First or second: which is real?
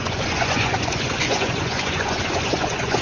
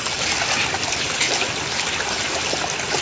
second